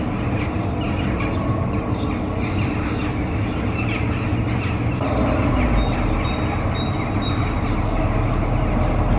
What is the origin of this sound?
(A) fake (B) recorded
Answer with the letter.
B